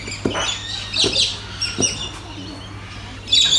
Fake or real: real